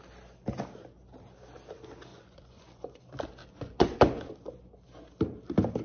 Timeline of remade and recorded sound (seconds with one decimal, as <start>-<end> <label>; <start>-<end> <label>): 0.0-2.1 recorded; 2.1-3.0 remade; 3.0-3.4 recorded; 3.4-4.0 remade; 4.0-5.8 recorded